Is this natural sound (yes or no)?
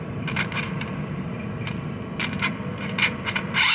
yes